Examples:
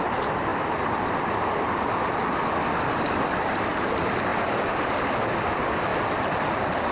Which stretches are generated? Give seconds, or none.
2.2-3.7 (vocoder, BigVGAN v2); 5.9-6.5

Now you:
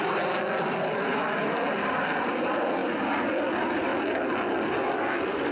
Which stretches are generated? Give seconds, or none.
none

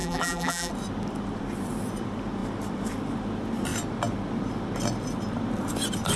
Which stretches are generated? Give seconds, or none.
0.0-0.7 (vocoder, BigVGAN v2)

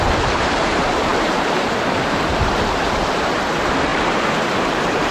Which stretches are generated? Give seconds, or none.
0.0-5.1 (vocoder, BigVGAN v2)

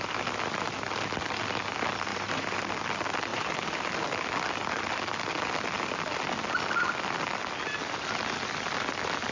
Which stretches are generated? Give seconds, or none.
2.1-2.7 (vocoder, BigVGAN v2); 3.3-3.9